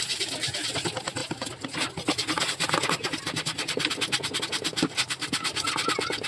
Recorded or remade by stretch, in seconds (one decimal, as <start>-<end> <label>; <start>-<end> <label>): 0.0-1.2 recorded; 1.2-4.4 remade; 4.4-6.3 recorded